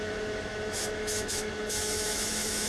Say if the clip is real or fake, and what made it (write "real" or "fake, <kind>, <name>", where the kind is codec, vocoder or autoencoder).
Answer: fake, autoencoder, DAC-VAE